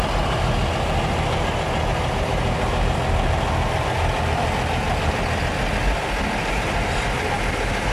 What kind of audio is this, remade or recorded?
recorded